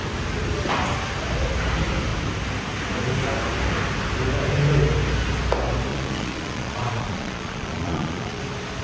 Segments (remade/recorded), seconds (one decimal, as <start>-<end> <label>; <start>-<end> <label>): 0.0-5.9 recorded; 5.9-8.4 remade; 8.4-8.8 recorded